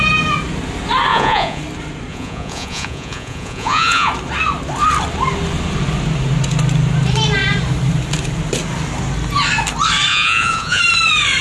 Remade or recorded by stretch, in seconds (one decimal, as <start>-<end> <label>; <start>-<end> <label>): 0.0-1.1 recorded; 1.1-1.6 remade; 1.6-2.1 recorded; 2.1-4.1 remade; 4.1-10.1 recorded; 10.1-10.8 remade; 10.8-11.4 recorded